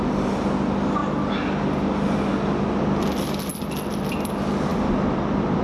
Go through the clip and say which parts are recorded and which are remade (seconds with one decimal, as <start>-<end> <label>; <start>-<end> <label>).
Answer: 0.0-3.5 recorded; 3.5-4.3 remade; 4.3-4.7 recorded; 4.7-5.6 remade